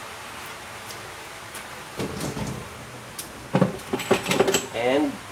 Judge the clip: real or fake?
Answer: fake